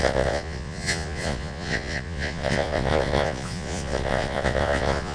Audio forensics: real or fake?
fake